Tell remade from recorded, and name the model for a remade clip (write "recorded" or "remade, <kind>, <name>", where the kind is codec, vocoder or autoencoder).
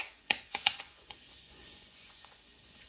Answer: remade, vocoder, Vocos